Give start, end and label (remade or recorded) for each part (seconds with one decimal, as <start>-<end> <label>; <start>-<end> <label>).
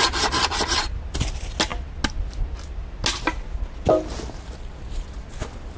0.0-5.8 recorded